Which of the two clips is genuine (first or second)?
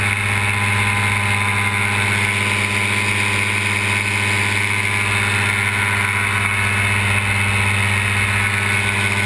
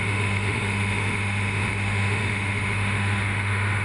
first